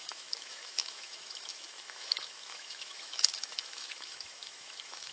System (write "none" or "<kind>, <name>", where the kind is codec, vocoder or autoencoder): autoencoder, DAC-VAE